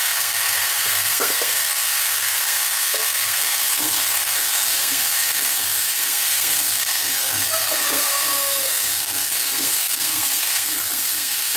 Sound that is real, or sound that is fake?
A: fake